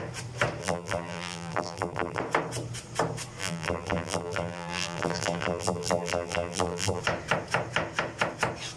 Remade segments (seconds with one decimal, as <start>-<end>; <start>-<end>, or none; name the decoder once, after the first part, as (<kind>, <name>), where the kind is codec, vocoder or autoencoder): 0.6-2.2 (vocoder, BigVGAN v2); 3.4-7.0